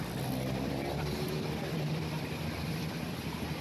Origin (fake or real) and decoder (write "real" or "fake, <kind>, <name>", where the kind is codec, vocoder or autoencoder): fake, vocoder, BigVGAN v2